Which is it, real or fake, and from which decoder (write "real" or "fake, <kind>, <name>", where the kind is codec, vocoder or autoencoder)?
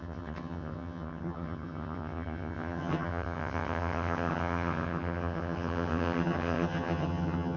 fake, vocoder, HiFi-GAN